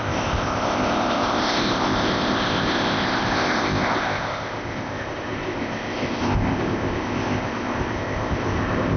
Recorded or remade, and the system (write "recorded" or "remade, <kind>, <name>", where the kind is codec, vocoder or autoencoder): remade, codec, ZipCodec